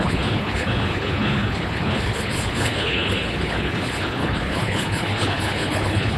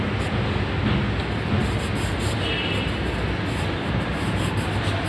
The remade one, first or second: first